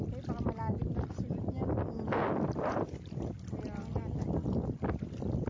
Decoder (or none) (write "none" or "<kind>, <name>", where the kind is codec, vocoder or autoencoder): none